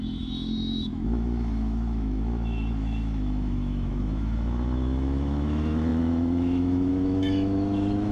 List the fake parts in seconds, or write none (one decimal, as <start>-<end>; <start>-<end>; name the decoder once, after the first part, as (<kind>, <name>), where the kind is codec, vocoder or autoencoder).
0.0-8.1 (autoencoder, DAC-VAE)